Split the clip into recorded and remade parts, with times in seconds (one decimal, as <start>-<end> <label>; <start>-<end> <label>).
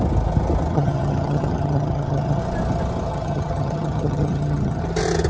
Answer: 0.0-0.7 recorded; 0.7-2.4 remade; 2.4-3.1 recorded; 3.1-4.8 remade; 4.8-5.3 recorded